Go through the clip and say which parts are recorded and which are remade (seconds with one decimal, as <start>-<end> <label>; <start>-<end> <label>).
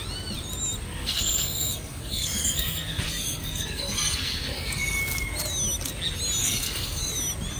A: 0.0-1.0 recorded; 1.0-5.0 remade; 5.0-6.4 recorded; 6.4-7.1 remade; 7.1-7.6 recorded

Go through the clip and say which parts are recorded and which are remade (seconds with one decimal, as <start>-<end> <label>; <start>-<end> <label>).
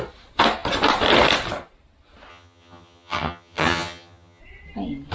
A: 0.0-2.3 recorded; 2.3-4.4 remade; 4.4-5.1 recorded